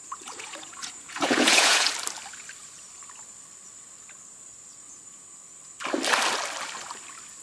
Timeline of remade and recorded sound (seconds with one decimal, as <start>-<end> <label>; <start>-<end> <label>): 0.0-1.9 remade; 1.9-7.4 recorded